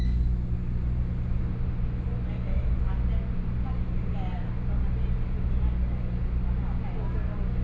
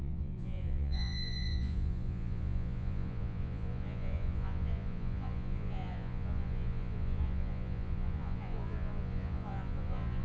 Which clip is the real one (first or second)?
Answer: first